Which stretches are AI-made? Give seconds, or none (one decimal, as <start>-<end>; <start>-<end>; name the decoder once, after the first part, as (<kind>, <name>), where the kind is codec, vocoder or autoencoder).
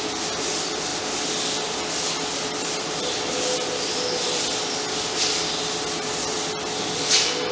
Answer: none